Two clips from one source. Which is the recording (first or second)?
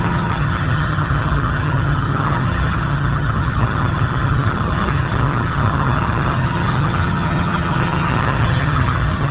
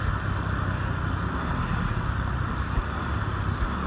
second